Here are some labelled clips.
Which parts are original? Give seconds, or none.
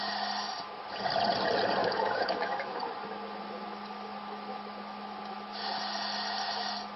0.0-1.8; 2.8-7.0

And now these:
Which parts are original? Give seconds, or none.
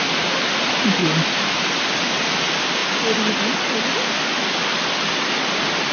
0.0-1.0; 2.4-5.9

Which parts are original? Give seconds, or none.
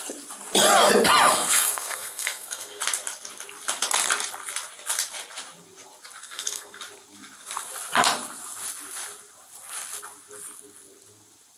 0.0-1.3; 2.8-6.2; 6.8-11.6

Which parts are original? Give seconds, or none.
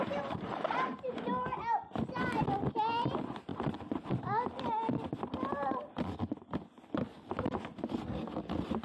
0.0-8.8